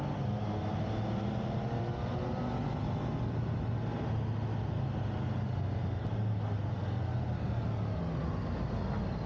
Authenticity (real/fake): real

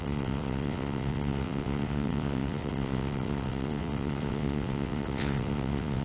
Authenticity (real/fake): fake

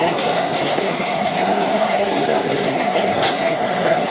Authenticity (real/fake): fake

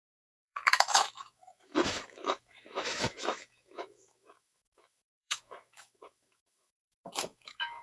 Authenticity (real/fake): fake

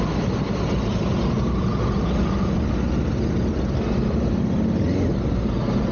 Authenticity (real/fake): real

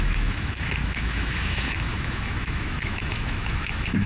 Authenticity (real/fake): fake